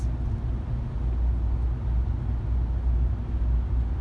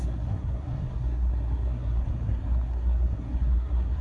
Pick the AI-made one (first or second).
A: second